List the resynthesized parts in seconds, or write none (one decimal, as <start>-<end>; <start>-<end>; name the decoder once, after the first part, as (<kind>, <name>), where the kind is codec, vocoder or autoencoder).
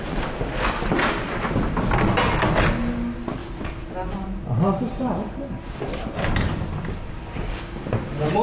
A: 3.4-7.2 (vocoder, BigVGAN v2)